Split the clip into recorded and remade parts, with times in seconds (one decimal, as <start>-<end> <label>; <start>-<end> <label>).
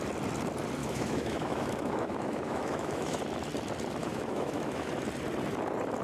0.0-0.8 recorded; 0.8-3.2 remade; 3.2-4.0 recorded; 4.0-4.9 remade; 4.9-6.0 recorded